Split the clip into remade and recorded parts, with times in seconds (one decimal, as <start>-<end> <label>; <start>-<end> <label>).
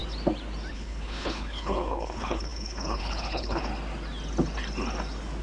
0.0-0.7 recorded; 0.7-3.7 remade; 3.7-5.4 recorded